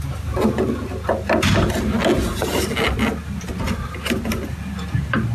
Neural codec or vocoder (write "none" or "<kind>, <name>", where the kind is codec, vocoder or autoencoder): none